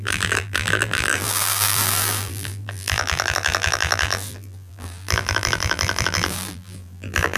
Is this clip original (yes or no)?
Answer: no